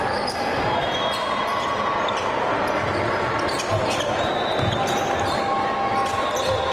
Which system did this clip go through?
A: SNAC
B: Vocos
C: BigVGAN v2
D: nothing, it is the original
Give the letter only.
D